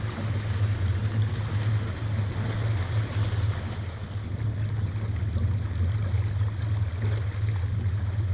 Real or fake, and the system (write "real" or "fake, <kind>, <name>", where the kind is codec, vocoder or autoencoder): real